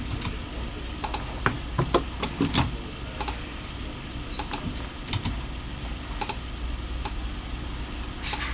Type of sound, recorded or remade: recorded